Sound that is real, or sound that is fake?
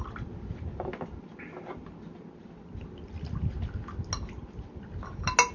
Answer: real